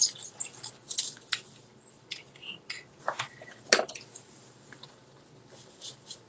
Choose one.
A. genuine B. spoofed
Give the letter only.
A